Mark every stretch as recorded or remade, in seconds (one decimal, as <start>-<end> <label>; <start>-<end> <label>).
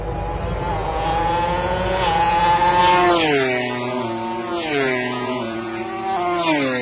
0.0-0.8 recorded; 0.8-2.8 remade; 2.8-4.5 recorded; 4.5-5.8 remade; 5.8-6.8 recorded